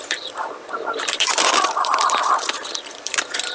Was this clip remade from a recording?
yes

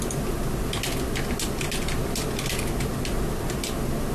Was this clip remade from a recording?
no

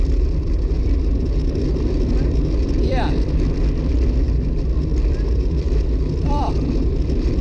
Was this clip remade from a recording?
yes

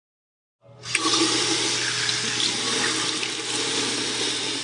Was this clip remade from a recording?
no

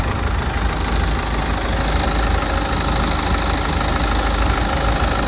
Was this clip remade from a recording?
no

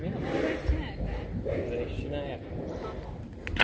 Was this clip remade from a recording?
no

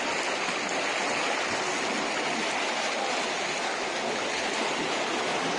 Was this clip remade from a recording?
no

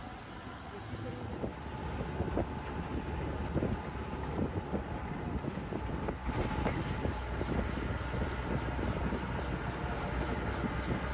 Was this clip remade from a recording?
no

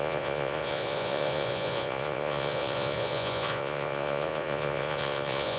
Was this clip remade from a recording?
yes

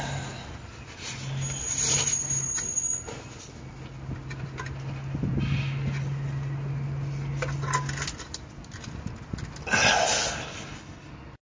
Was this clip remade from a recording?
no